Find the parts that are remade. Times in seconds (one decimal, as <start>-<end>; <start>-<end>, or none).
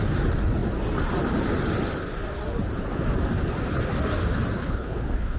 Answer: 4.6-5.4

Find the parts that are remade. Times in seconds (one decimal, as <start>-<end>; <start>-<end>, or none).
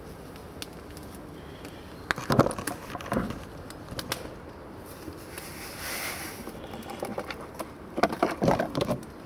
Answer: 7.1-8.9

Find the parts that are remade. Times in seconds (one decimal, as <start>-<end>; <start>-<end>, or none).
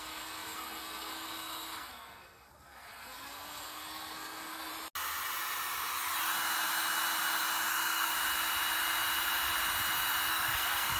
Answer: 0.0-4.7; 7.7-8.1; 10.3-11.0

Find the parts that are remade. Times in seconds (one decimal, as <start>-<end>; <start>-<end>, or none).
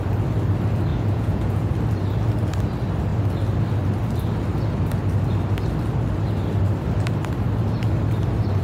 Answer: 0.9-1.7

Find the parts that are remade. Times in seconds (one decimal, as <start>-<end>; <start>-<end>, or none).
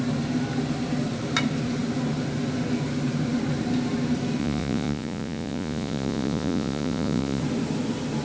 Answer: 4.4-7.4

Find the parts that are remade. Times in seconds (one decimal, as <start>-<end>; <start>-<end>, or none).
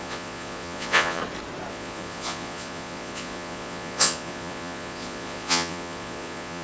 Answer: 0.0-1.2; 1.7-6.6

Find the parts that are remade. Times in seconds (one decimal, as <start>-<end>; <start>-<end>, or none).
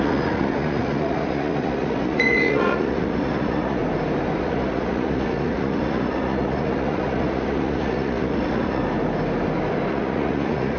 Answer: 0.0-3.8; 4.4-8.8; 9.9-10.8